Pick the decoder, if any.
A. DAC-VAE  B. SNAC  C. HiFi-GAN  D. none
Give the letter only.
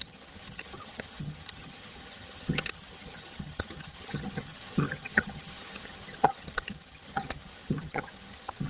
C